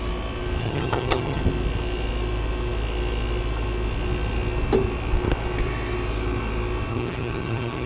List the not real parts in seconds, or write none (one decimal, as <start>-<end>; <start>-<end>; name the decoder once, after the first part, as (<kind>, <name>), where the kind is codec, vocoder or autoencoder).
0.6-1.4 (vocoder, HiFi-GAN); 6.9-7.9